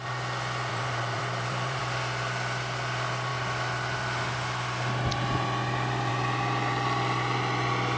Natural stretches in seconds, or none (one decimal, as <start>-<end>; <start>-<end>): 0.0-0.7; 1.8-8.0